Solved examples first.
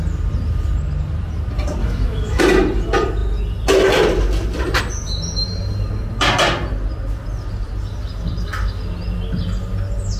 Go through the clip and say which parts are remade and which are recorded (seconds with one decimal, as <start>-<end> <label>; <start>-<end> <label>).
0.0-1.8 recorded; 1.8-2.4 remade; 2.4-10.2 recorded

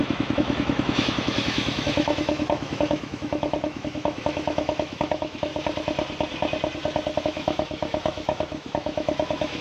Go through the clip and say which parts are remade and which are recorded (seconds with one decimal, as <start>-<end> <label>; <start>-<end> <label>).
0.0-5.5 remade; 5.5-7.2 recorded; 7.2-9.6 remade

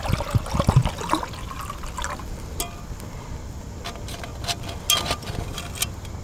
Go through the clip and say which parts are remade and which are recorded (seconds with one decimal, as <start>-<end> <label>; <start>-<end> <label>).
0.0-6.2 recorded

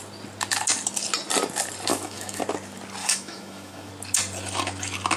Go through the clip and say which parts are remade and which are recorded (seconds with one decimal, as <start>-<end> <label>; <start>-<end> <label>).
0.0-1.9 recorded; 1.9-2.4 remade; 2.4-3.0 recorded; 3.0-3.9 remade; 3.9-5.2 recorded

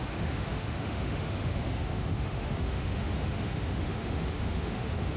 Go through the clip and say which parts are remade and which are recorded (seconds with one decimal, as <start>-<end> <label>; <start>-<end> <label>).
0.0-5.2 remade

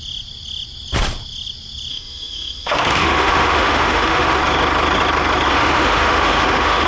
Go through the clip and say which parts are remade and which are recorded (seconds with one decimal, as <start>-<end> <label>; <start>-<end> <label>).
0.0-1.9 recorded; 1.9-4.4 remade; 4.4-5.5 recorded; 5.5-6.9 remade